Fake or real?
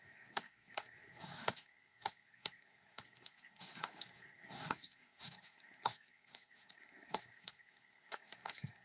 fake